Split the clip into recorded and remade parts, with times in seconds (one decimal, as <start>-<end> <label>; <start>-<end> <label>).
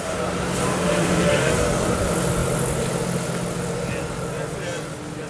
0.0-0.7 recorded; 0.7-1.5 remade; 1.5-5.3 recorded